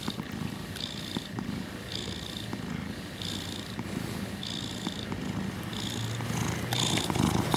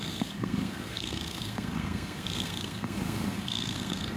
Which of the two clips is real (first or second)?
first